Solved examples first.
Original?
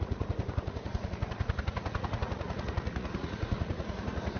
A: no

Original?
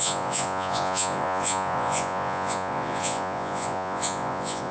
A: no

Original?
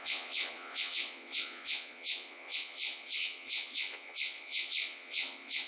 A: no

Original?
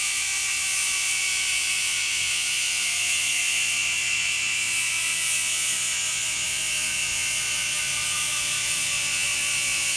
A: no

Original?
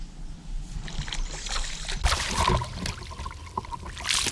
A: yes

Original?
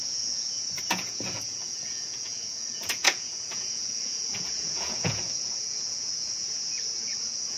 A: no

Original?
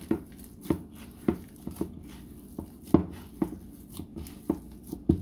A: yes